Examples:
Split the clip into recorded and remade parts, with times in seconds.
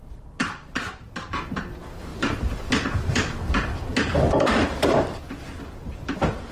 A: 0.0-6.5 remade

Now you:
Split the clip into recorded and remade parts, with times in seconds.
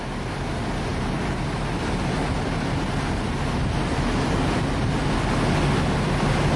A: 0.0-0.9 recorded; 0.9-4.9 remade; 4.9-6.6 recorded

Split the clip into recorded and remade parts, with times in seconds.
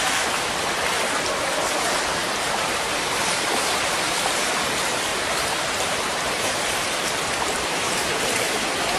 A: 0.0-2.2 recorded; 2.2-3.7 remade; 3.7-5.1 recorded; 5.1-8.6 remade; 8.6-9.0 recorded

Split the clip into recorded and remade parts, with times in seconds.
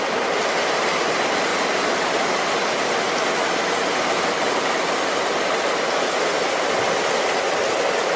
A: 0.0-8.2 recorded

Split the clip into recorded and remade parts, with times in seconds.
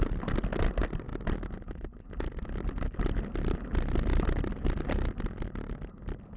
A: 0.0-6.4 recorded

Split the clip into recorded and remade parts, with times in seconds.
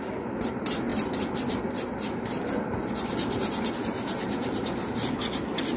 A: 0.0-0.9 recorded; 0.9-3.7 remade; 3.7-5.8 recorded